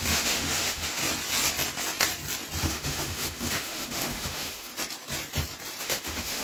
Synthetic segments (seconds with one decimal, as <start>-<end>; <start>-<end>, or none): 0.0-1.0; 2.6-4.7; 5.8-6.4